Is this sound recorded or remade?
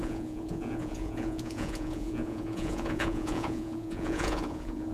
remade